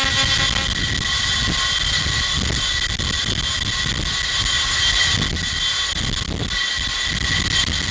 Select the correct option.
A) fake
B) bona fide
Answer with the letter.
B